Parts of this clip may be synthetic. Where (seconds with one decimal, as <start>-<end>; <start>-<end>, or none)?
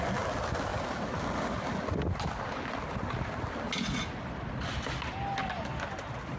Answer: none